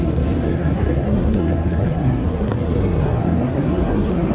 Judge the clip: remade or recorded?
remade